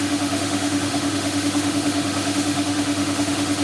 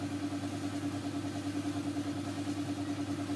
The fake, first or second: first